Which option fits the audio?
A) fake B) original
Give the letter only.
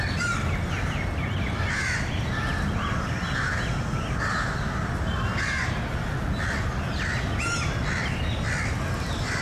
B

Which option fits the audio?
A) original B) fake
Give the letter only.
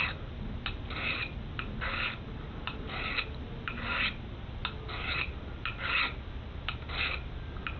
A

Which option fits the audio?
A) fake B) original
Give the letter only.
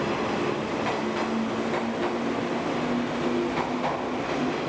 B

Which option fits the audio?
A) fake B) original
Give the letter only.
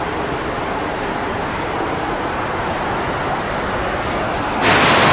B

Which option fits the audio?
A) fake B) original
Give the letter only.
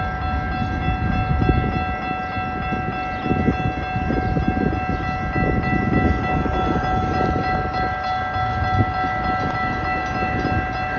B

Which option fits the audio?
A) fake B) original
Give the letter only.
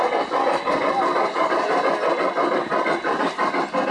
B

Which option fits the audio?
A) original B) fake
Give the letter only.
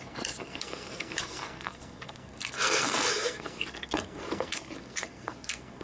B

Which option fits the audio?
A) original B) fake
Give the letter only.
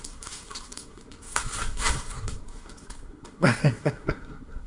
B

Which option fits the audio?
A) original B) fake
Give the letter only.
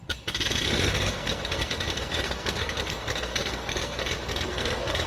B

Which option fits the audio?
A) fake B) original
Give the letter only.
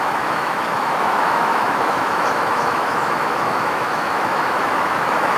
A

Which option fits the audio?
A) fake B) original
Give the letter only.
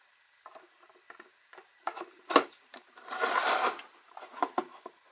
A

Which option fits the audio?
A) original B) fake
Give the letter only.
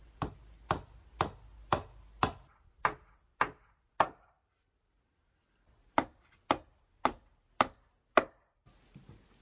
A